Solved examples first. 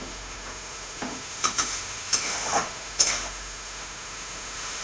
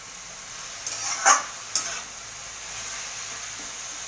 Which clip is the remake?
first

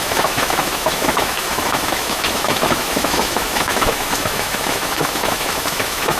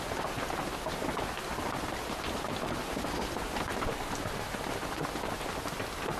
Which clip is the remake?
first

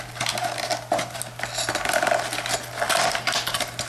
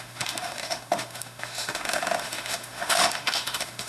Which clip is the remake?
second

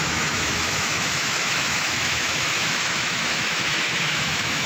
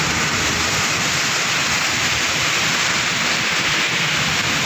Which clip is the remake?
first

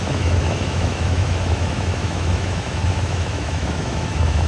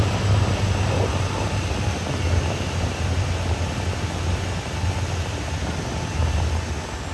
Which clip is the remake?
first